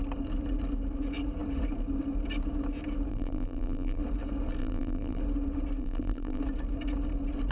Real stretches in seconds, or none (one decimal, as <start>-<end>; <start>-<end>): 0.0-3.1; 4.0-4.6; 5.2-5.8; 6.4-7.5